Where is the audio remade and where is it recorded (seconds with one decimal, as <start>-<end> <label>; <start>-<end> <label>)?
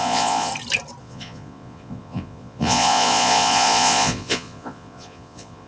0.0-0.5 remade; 0.5-1.0 recorded; 1.0-5.7 remade